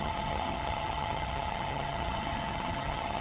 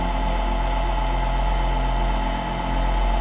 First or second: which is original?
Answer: second